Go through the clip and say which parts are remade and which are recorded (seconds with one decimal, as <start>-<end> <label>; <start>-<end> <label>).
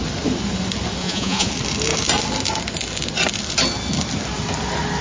0.0-1.0 recorded; 1.0-1.5 remade; 1.5-5.0 recorded